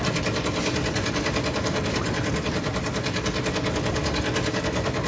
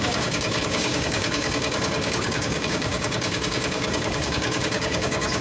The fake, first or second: second